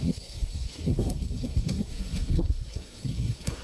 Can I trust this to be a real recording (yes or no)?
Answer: no